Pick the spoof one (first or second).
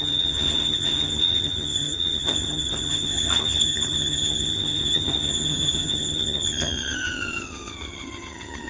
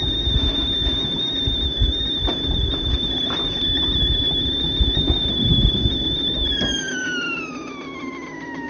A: first